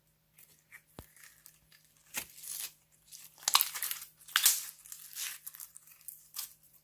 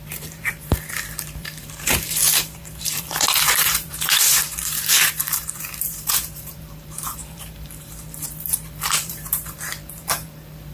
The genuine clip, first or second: first